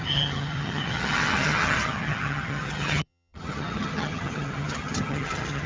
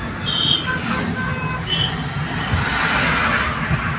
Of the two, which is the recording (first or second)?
second